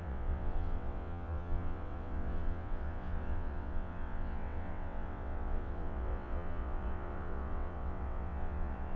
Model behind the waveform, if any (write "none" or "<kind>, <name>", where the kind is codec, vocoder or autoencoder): vocoder, WaveNeXt